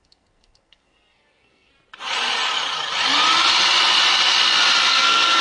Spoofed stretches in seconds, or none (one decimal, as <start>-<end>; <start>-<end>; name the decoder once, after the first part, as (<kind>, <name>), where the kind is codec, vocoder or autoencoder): 0.0-1.7 (codec, SNAC); 4.9-5.4

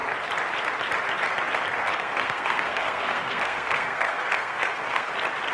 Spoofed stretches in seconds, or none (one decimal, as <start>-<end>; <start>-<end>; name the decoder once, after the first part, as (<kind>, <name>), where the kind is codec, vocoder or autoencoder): 1.8-5.1 (codec, SNAC)

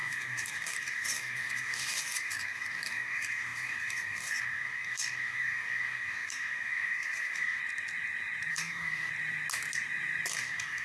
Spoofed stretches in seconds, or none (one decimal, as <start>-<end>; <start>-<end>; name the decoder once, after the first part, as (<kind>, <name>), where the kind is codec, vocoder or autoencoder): 0.0-7.6 (codec, DAC); 8.5-9.1; 10.3-10.8

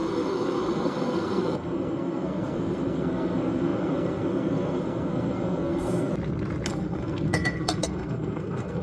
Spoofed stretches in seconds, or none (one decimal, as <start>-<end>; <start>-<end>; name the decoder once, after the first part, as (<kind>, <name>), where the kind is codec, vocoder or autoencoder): 0.0-6.1 (codec, SNAC); 6.7-8.8

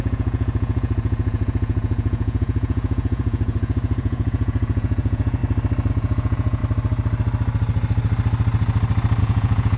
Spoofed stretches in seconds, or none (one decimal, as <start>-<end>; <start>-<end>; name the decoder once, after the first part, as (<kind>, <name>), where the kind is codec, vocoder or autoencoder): 0.0-5.4 (vocoder, Vocos); 5.9-6.6; 9.2-9.8

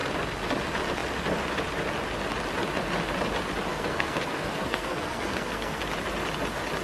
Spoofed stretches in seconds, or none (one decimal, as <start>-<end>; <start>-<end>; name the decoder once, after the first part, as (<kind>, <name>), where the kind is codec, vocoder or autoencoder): 3.7-5.8 (codec, SNAC)

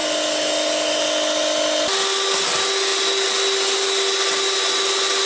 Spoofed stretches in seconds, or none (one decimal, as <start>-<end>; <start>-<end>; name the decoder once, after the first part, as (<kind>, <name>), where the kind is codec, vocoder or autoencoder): none